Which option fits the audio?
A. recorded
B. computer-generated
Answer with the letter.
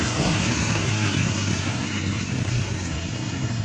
B